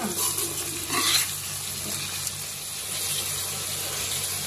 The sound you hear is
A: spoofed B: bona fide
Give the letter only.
B